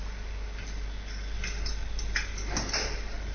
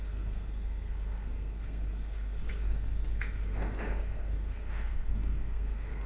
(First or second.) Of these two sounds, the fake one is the second